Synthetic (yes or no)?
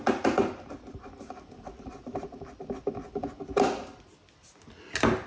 no